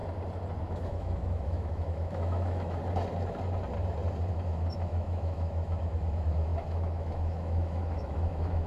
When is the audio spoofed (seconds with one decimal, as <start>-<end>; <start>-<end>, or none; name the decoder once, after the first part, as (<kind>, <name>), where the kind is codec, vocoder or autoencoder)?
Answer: 0.6-2.8 (autoencoder, DAC-VAE); 4.3-8.7